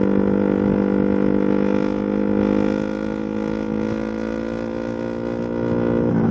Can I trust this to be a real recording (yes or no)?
yes